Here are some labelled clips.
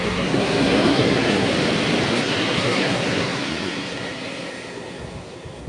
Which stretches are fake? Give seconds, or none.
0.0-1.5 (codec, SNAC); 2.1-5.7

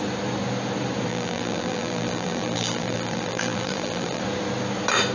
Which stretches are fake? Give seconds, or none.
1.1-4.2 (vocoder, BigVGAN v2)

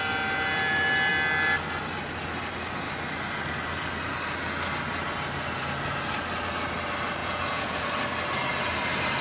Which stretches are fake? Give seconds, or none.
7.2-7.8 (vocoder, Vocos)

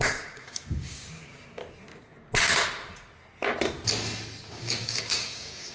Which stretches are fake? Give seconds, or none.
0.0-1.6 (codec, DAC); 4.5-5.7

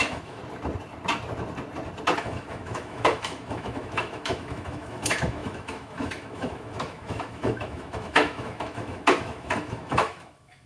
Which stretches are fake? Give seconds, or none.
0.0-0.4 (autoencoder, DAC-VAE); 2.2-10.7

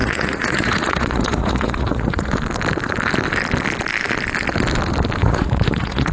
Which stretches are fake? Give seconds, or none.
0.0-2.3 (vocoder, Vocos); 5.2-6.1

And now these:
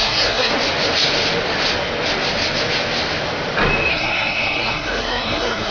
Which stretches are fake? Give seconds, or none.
0.0-0.5 (codec, SNAC); 3.9-5.7

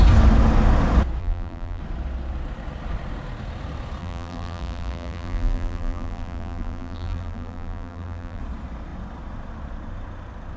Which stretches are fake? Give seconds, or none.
1.2-1.8 (vocoder, BigVGAN v2); 4.0-8.4